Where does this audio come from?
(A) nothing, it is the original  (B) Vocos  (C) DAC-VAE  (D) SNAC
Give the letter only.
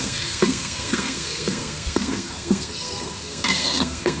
D